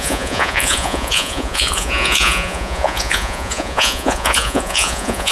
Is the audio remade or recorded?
remade